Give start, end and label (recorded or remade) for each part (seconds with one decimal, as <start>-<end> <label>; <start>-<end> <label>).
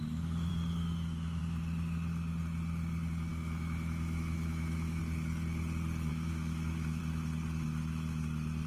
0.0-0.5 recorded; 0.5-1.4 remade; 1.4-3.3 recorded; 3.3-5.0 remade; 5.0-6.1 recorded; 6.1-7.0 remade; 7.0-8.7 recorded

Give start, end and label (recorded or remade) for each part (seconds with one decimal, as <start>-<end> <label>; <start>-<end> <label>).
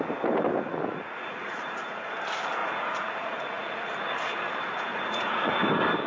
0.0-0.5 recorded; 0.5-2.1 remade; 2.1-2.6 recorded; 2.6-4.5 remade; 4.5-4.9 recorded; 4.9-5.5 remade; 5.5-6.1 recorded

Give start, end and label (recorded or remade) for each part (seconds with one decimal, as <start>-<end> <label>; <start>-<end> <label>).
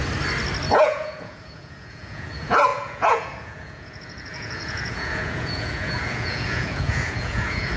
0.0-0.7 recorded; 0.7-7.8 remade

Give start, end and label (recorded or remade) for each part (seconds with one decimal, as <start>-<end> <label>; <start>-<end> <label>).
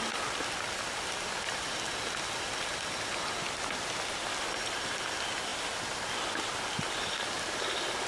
0.0-8.1 recorded